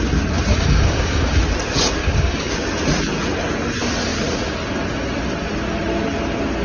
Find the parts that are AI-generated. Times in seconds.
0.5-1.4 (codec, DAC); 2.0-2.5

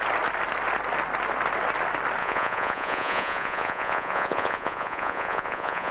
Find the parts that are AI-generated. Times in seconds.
2.2-5.9 (vocoder, Vocos)

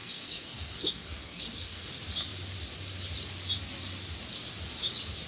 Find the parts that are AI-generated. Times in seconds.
0.0-1.9 (codec, SNAC)

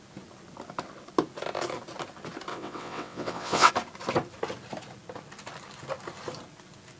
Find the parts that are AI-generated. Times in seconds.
2.5-3.7 (vocoder, WaveNeXt)

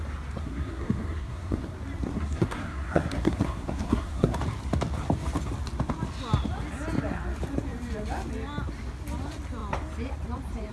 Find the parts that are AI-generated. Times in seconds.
0.4-1.7 (codec, SNAC); 2.1-4.4

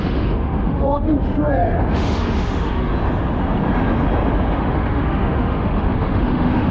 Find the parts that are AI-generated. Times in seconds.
0.0-2.9 (autoencoder, DAC-VAE); 4.6-6.7

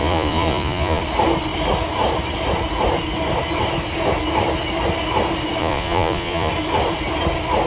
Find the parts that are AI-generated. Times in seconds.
0.0-1.0 (vocoder, Vocos); 5.6-6.5

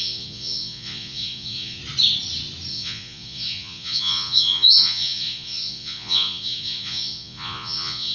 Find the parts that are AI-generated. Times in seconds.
0.0-1.8 (vocoder, Vocos); 2.7-8.1